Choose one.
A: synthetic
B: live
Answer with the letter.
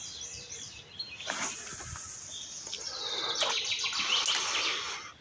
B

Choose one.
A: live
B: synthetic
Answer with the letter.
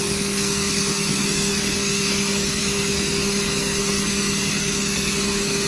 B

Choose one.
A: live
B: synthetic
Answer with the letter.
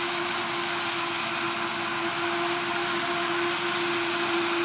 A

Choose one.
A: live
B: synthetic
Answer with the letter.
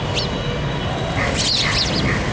A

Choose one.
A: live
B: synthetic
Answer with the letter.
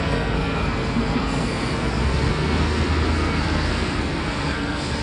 B